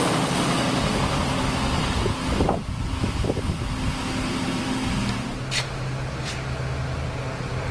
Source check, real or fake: real